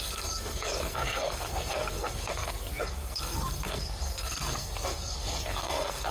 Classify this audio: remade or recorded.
remade